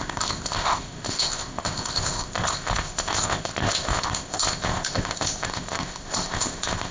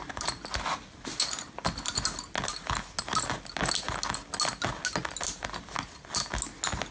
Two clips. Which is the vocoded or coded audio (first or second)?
first